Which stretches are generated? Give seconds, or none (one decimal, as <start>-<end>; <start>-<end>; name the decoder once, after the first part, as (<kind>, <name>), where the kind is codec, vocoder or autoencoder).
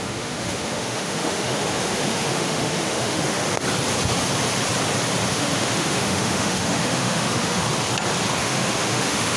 0.0-3.4 (autoencoder, DAC-VAE); 5.3-7.6; 8.4-9.4